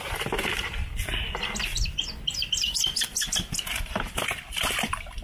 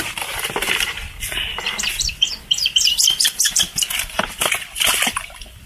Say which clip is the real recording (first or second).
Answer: first